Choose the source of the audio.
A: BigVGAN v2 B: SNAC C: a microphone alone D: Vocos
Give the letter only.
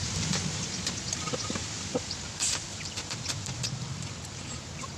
A